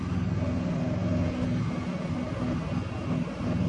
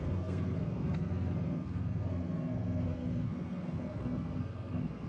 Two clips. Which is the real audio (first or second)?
first